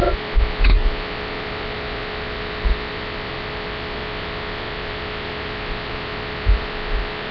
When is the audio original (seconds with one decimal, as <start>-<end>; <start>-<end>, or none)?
0.0-7.3